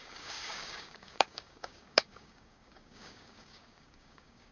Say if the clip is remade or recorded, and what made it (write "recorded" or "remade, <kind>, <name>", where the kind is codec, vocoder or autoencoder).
remade, codec, DAC